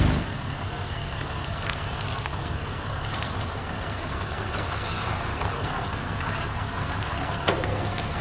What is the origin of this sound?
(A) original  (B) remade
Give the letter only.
B